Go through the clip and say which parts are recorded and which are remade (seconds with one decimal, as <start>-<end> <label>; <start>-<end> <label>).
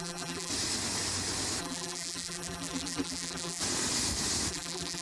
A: 0.0-0.5 remade; 0.5-1.6 recorded; 1.6-3.6 remade; 3.6-4.5 recorded; 4.5-5.0 remade